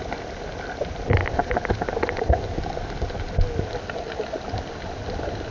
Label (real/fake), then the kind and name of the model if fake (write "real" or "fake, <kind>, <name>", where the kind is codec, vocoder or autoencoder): real